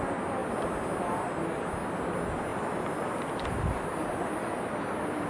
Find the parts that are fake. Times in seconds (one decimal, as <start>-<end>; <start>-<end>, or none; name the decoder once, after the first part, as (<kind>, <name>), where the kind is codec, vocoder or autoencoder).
2.5-4.6 (vocoder, BigVGAN v2)